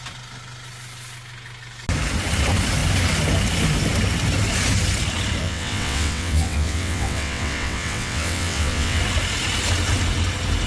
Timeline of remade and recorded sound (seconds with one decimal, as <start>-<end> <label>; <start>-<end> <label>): 0.0-5.4 recorded; 5.4-9.0 remade; 9.0-10.7 recorded